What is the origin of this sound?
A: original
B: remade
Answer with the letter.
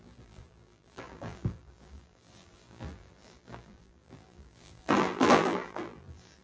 B